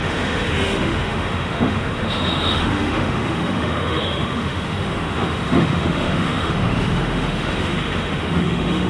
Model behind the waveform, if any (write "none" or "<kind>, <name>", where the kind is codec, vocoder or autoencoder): autoencoder, DAC-VAE